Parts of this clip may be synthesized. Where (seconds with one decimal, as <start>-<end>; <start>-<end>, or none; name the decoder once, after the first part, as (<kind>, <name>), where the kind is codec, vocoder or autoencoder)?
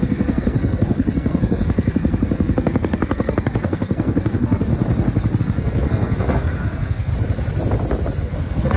0.0-4.7 (codec, SNAC); 5.4-7.1; 8.2-8.8